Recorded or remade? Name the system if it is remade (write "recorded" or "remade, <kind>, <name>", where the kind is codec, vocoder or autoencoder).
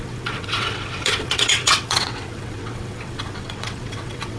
remade, vocoder, WaveNeXt